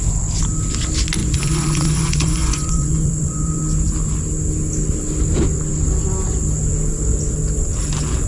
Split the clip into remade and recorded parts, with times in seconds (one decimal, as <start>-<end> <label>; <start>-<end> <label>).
0.0-1.2 recorded; 1.2-3.6 remade; 3.6-8.3 recorded

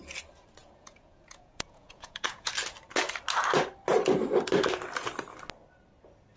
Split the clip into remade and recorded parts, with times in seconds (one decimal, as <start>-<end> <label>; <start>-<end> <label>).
0.0-0.6 recorded; 0.6-2.5 remade; 2.5-6.4 recorded